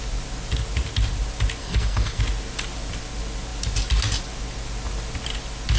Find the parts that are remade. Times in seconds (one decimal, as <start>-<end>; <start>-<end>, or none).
1.6-2.2